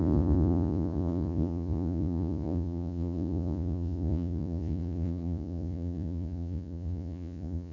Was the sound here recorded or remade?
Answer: remade